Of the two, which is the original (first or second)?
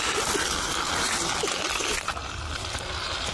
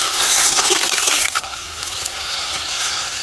first